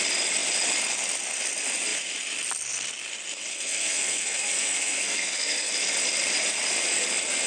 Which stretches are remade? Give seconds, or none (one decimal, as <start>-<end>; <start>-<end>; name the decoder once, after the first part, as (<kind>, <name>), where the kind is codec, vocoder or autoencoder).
3.5-5.7 (codec, SNAC)